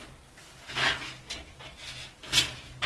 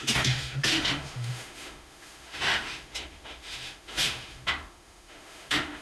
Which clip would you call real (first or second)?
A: first